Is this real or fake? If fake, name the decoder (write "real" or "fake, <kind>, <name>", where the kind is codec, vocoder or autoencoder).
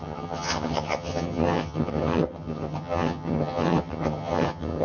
fake, vocoder, HiFi-GAN